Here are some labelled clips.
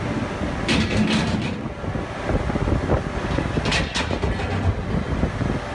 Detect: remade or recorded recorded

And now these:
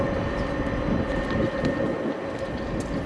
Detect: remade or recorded recorded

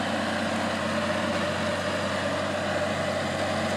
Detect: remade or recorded recorded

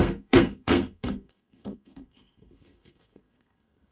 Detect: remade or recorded remade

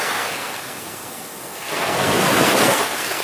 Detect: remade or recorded remade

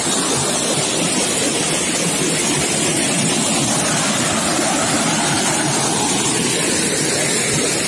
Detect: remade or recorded recorded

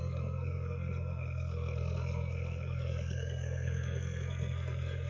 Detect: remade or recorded remade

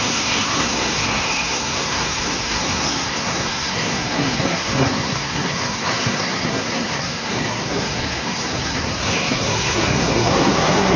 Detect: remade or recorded remade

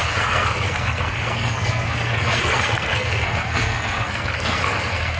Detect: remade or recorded remade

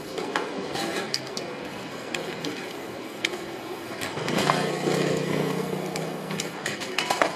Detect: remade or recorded remade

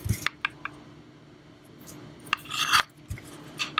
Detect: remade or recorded recorded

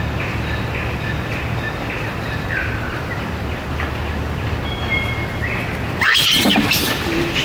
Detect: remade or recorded recorded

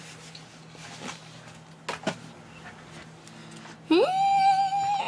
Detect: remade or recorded recorded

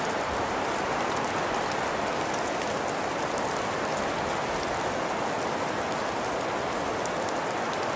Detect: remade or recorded recorded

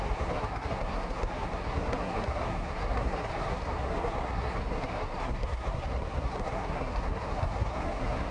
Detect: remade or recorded remade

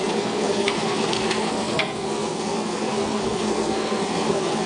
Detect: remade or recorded remade